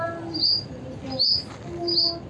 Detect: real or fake real